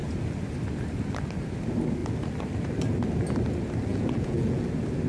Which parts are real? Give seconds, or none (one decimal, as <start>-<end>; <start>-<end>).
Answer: 0.0-3.9; 4.6-5.1